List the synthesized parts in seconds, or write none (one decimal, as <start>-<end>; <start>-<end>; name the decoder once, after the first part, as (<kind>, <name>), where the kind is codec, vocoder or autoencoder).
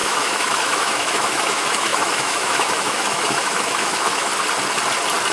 0.0-4.3 (autoencoder, DAC-VAE)